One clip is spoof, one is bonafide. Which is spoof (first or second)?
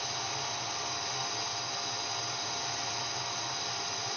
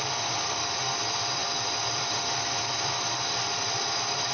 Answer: second